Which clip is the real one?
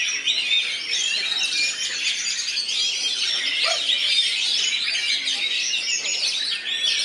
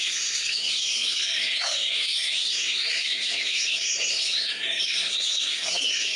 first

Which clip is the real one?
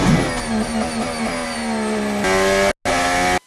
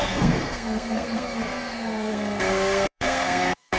first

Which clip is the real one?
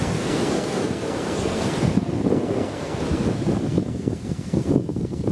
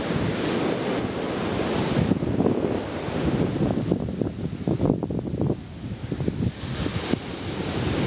second